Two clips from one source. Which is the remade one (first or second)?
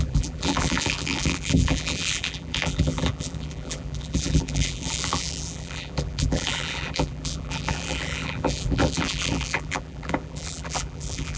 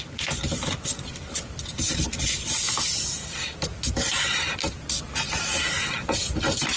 first